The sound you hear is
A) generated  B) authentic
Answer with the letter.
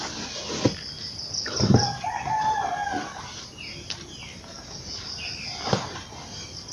B